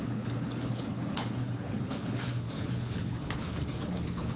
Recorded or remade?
remade